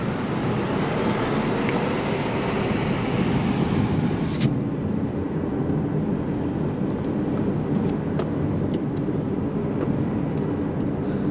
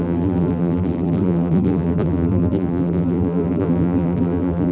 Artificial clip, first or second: second